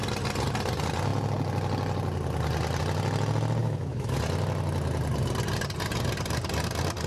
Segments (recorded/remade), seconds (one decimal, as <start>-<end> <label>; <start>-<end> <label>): 0.0-3.6 recorded; 3.6-4.2 remade; 4.2-7.1 recorded